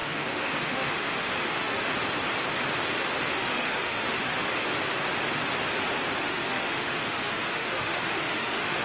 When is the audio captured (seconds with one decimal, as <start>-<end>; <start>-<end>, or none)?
1.9-3.3; 4.3-6.2